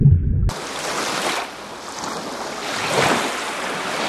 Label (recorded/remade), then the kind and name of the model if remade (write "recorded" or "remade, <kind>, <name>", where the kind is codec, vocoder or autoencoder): recorded